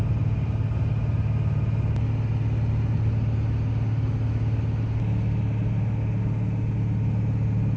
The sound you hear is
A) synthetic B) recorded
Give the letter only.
B